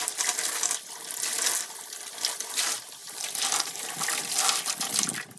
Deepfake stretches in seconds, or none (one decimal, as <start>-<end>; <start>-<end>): 3.0-3.9